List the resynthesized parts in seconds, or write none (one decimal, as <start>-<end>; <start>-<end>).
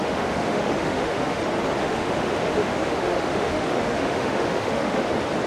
0.0-1.4; 1.8-5.1